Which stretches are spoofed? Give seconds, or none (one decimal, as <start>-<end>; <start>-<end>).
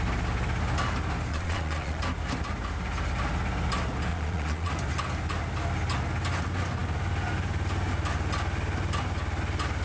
1.3-2.0; 4.1-4.7